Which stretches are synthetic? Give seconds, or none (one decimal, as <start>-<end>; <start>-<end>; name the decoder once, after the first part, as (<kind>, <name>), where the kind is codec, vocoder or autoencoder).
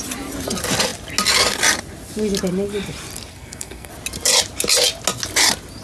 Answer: 3.3-3.9 (codec, SNAC)